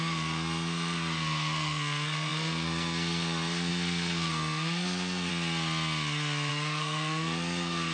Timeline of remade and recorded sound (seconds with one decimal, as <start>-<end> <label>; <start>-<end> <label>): 0.0-5.3 remade; 5.3-6.5 recorded; 6.5-7.9 remade